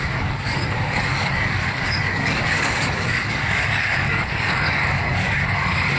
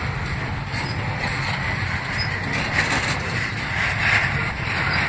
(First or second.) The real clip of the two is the second